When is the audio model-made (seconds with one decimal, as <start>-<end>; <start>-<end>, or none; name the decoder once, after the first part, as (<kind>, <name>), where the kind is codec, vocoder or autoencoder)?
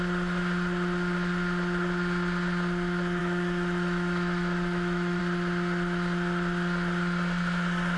3.2-5.2 (autoencoder, DAC-VAE)